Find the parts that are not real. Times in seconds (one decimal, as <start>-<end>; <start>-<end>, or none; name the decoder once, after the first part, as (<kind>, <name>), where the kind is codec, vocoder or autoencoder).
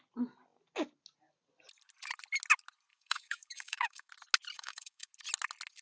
2.9-4.1 (codec, DAC); 4.5-5.1